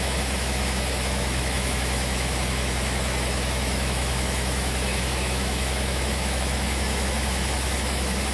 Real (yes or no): no